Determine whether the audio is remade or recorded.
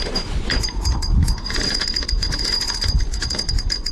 remade